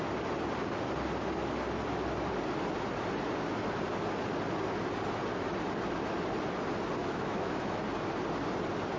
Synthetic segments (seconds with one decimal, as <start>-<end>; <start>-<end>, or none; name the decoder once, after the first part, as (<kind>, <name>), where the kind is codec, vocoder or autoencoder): 7.0-7.8 (autoencoder, DAC-VAE)